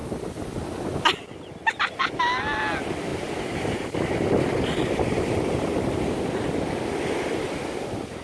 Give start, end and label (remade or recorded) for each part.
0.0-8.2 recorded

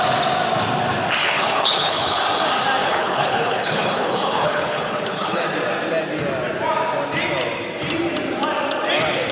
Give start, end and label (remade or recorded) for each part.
0.0-1.2 recorded; 1.2-2.2 remade; 2.2-2.8 recorded; 2.8-5.4 remade; 5.4-9.3 recorded